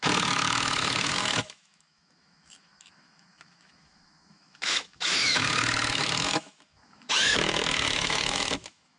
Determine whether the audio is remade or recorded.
remade